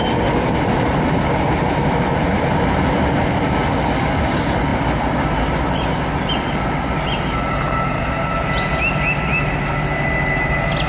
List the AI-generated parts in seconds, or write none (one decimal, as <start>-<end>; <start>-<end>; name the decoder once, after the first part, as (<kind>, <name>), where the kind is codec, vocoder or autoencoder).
none